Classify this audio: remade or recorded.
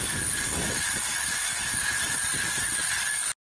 recorded